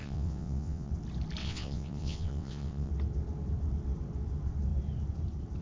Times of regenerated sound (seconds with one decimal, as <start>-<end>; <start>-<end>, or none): 0.0-0.9; 1.4-2.9

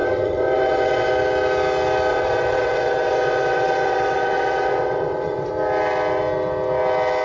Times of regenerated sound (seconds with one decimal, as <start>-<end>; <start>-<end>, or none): 0.0-1.1; 2.1-5.5

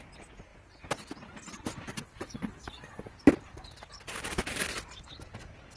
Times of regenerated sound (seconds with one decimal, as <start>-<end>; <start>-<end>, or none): 1.9-3.1